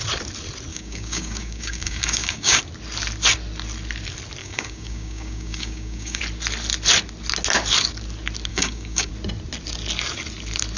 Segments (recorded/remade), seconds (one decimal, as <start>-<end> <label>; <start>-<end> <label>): 0.0-0.7 recorded; 0.7-2.6 remade; 2.6-4.4 recorded; 4.4-6.2 remade; 6.2-8.5 recorded; 8.5-9.1 remade; 9.1-10.8 recorded